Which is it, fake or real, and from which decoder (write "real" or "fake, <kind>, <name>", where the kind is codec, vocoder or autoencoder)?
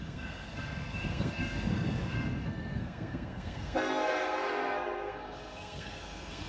fake, codec, SNAC